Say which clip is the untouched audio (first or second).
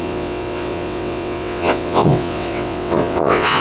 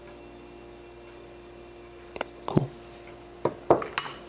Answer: second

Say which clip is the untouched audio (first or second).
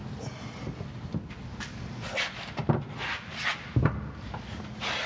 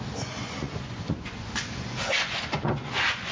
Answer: first